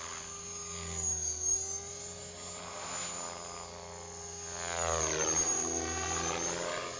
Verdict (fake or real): real